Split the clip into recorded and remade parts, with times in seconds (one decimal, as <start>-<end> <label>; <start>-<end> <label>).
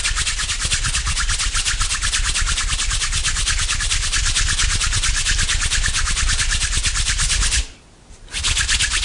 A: 0.0-9.0 recorded